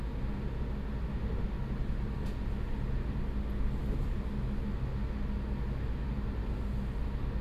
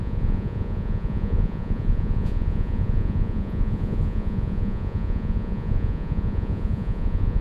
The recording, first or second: first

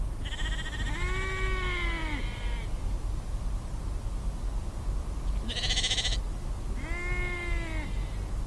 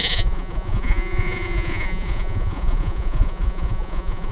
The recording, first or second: first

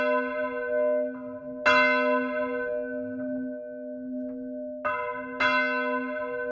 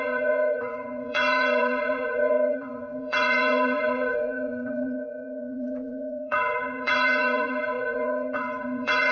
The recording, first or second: first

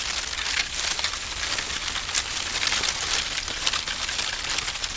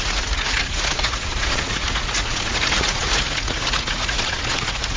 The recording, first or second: first